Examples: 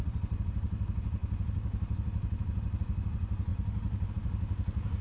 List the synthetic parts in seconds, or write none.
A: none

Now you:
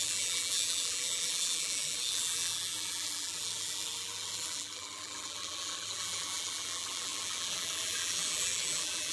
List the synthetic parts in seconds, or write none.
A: 0.0-9.1 (vocoder, BigVGAN v2)

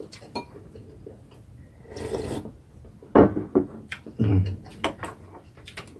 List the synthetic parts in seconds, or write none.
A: none

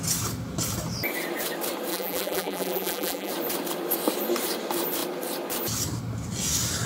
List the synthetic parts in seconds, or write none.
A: 1.9-3.3 (vocoder, BigVGAN v2)

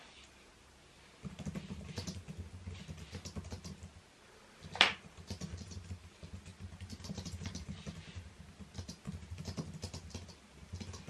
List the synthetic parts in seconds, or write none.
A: 6.5-8.4 (vocoder, BigVGAN v2)